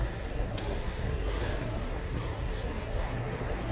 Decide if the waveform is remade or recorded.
remade